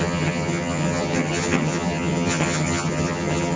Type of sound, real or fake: fake